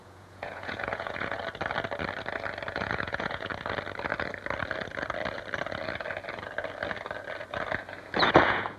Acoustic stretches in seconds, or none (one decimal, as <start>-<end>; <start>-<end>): 1.4-2.7; 3.5-8.2